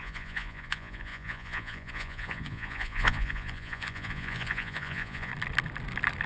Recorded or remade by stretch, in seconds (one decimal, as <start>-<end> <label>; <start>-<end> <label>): 0.0-5.3 remade; 5.3-6.3 recorded